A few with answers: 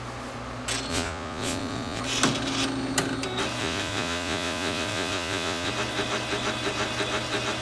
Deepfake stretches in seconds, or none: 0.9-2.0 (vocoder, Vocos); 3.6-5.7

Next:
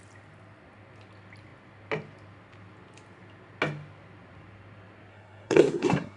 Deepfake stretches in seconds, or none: 5.1-6.2 (codec, SNAC)

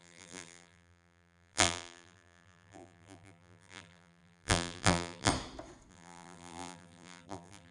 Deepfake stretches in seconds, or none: 0.0-5.3 (vocoder, BigVGAN v2); 5.9-7.7

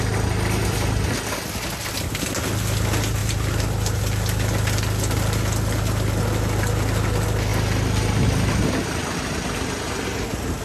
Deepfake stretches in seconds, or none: 3.2-4.0 (vocoder, BigVGAN v2)

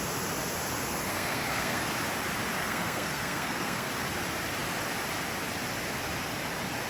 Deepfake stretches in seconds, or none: 1.1-1.9 (codec, SNAC); 2.6-3.9